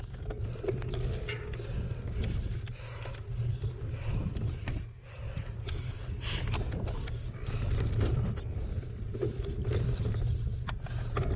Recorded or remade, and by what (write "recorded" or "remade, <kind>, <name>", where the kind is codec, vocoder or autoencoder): recorded